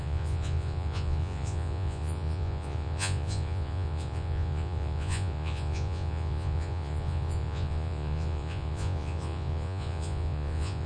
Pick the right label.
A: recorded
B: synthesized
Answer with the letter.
B